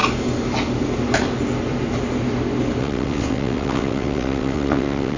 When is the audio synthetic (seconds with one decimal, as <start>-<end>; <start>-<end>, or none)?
2.8-5.2